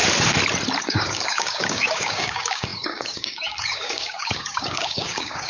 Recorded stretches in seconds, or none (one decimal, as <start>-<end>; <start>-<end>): 0.0-0.8